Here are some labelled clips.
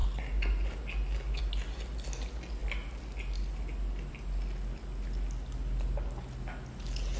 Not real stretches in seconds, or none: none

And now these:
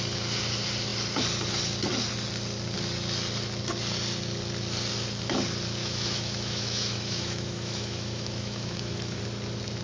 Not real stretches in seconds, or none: 5.8-9.2 (autoencoder, DAC-VAE)